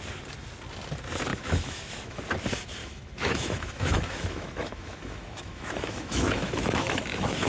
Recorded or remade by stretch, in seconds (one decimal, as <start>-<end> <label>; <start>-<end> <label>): 0.0-1.3 recorded; 1.3-2.2 remade; 2.2-2.8 recorded; 2.8-7.5 remade